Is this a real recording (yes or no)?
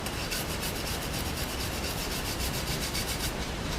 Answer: no